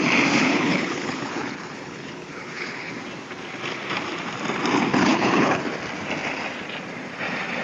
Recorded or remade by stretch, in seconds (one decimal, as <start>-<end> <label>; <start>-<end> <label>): 0.0-0.4 recorded; 0.4-2.9 remade; 2.9-4.9 recorded; 4.9-5.6 remade; 5.6-7.6 recorded